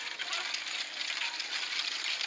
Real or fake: real